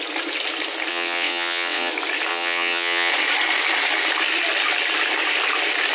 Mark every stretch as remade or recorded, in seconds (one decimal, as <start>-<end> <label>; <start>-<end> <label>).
0.0-0.9 recorded; 0.9-1.9 remade; 1.9-2.3 recorded; 2.3-3.1 remade; 3.1-5.9 recorded